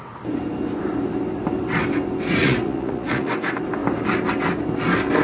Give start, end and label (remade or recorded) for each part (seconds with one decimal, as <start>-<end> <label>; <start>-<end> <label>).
0.0-2.4 recorded; 2.4-3.3 remade; 3.3-5.2 recorded